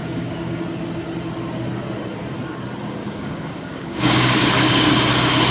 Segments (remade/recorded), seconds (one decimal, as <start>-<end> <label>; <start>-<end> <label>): 0.0-0.6 remade; 0.6-3.0 recorded; 3.0-4.9 remade; 4.9-5.5 recorded